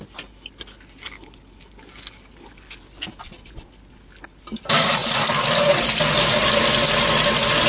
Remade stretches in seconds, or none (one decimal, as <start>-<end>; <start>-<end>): none